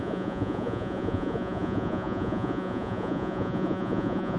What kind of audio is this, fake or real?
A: fake